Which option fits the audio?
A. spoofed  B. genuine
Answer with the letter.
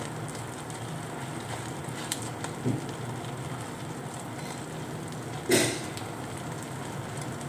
B